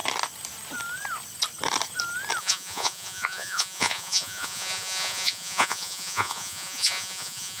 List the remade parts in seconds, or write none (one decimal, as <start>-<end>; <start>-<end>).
2.4-7.6